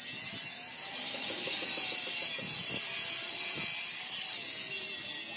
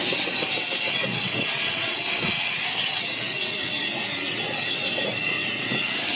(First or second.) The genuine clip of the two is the first